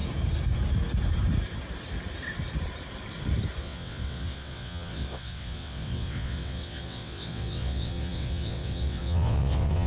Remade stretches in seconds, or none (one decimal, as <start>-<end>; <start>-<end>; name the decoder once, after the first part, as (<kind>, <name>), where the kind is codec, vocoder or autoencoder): 3.6-9.9 (vocoder, WaveNeXt)